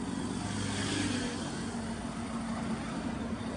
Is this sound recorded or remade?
recorded